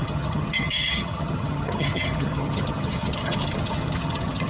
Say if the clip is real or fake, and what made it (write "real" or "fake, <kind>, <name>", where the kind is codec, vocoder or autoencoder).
fake, vocoder, HiFi-GAN